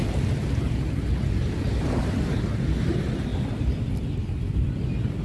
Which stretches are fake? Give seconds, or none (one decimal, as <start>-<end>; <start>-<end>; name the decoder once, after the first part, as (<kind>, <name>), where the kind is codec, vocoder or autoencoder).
none